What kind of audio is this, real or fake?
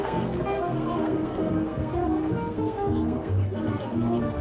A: fake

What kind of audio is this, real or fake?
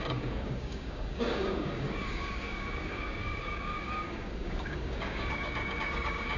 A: fake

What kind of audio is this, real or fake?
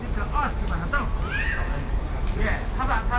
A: real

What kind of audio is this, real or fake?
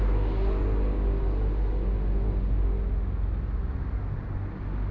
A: real